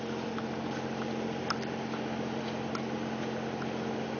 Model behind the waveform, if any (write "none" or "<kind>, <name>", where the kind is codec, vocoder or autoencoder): none